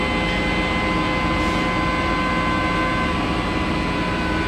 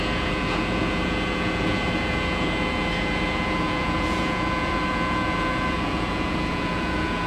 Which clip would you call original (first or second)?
first